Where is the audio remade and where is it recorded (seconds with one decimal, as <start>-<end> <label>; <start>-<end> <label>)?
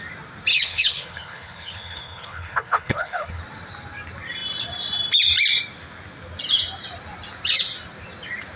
0.0-0.5 recorded; 0.5-3.4 remade; 3.4-8.6 recorded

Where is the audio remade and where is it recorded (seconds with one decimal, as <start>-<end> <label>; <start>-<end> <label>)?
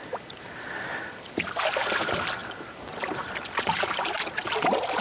0.0-5.0 recorded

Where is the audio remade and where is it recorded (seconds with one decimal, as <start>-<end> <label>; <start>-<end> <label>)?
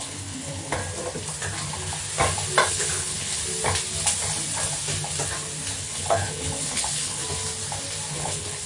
0.0-0.8 remade; 0.8-2.7 recorded; 2.7-3.4 remade; 3.4-5.8 recorded; 5.8-7.2 remade; 7.2-8.1 recorded; 8.1-8.7 remade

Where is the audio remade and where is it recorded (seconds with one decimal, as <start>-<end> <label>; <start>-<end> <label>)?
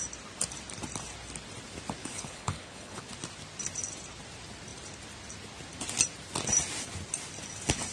0.0-2.0 recorded; 2.0-3.0 remade; 3.0-7.9 recorded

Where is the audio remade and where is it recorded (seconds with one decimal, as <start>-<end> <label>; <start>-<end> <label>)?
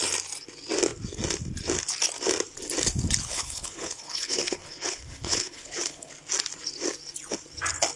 0.0-3.3 recorded; 3.3-6.1 remade; 6.1-8.0 recorded